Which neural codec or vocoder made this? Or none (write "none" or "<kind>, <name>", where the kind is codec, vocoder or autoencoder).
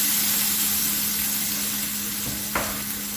none